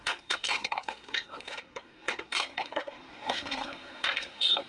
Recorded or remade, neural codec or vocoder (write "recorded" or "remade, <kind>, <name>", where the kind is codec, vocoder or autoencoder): remade, codec, SNAC